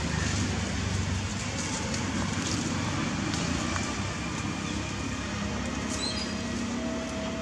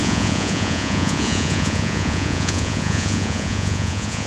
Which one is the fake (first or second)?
second